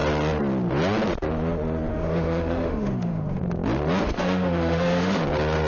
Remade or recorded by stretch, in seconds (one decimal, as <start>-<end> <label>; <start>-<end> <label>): 0.0-1.9 recorded; 1.9-3.4 remade; 3.4-4.0 recorded; 4.0-5.2 remade; 5.2-5.7 recorded